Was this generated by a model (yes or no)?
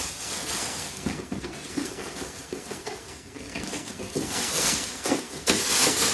yes